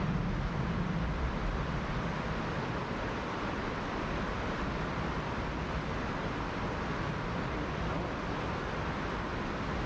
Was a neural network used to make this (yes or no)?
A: no